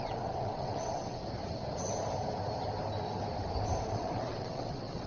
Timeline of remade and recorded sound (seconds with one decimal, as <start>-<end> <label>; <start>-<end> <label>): 0.0-1.2 remade; 1.2-3.9 recorded; 3.9-5.1 remade